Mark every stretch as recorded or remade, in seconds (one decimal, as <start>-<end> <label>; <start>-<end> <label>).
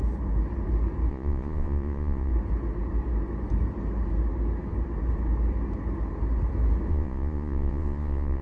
0.0-1.1 recorded; 1.1-2.3 remade; 2.3-6.9 recorded; 6.9-8.4 remade